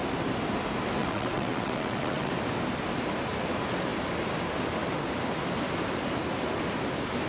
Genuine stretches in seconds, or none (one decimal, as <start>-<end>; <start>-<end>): 0.0-1.0; 2.3-7.3